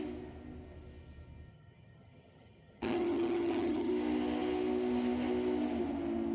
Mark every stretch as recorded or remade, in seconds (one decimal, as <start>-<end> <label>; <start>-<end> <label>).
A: 0.0-1.5 recorded; 1.5-3.9 remade; 3.9-6.3 recorded